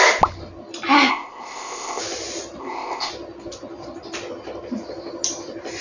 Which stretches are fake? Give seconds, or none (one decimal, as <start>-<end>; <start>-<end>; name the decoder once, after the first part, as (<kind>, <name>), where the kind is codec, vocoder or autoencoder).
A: 1.1-2.0 (codec, ZipCodec); 2.6-3.1